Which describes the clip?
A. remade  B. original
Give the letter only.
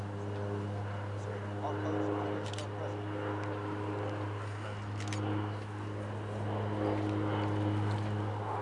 B